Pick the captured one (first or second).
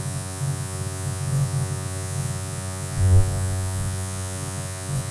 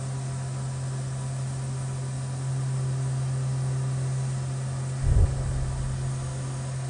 second